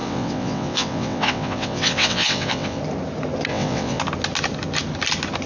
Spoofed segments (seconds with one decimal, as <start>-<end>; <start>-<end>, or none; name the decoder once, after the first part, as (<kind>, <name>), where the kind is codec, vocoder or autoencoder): 0.0-2.8 (vocoder, WaveNeXt); 3.5-4.0